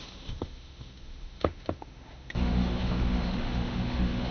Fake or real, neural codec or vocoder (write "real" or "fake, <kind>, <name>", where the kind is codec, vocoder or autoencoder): fake, autoencoder, DAC-VAE